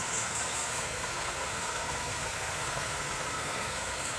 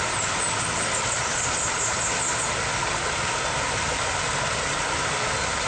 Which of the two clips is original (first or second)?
second